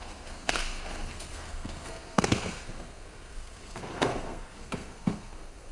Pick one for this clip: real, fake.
fake